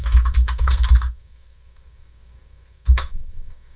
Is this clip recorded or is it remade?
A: remade